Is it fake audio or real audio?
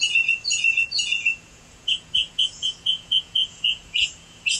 fake